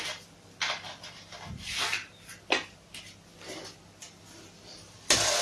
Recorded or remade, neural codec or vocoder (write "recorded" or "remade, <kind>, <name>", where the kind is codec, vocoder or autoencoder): recorded